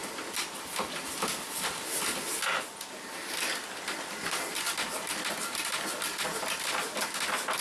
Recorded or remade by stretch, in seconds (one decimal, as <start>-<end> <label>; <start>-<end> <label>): 0.0-7.6 recorded